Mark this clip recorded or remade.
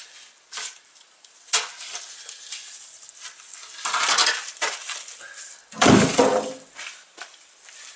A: recorded